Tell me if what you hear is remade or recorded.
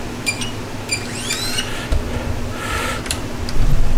recorded